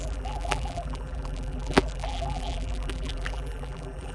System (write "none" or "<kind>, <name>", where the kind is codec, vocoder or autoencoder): vocoder, BigVGAN v2